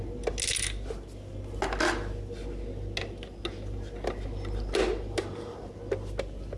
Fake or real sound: real